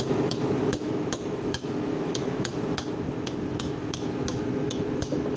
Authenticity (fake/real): fake